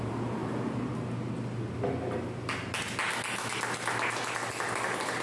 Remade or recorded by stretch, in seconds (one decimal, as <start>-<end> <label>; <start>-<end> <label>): 0.0-5.2 recorded